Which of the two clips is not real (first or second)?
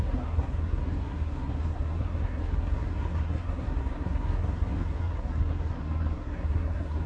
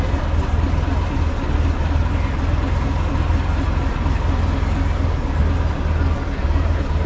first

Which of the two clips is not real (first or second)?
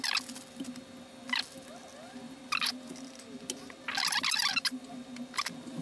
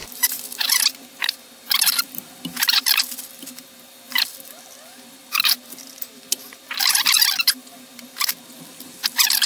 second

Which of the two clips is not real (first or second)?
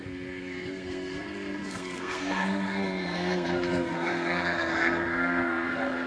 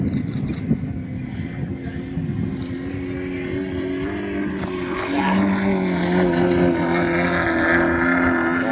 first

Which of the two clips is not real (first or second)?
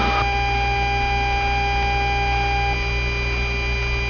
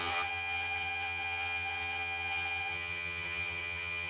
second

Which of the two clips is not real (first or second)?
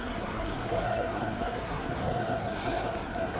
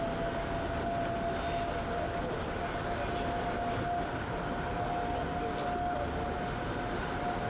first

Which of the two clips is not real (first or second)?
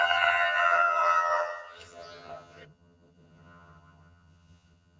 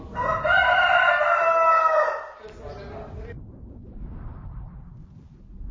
first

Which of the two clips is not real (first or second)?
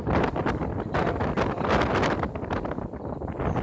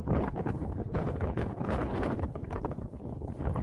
second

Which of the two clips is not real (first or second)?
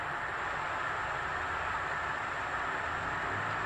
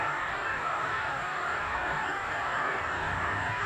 second